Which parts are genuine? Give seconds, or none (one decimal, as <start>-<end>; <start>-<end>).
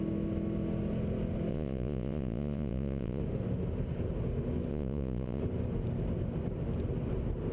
0.0-1.5; 3.2-4.7; 5.4-7.5